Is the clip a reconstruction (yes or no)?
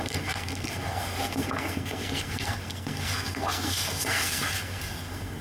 yes